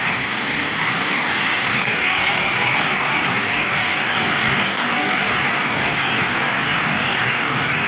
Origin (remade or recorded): remade